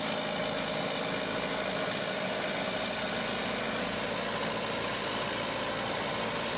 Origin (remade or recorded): recorded